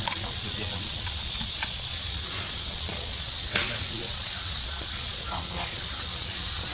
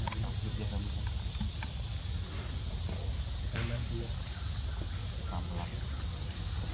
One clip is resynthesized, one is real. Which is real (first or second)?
second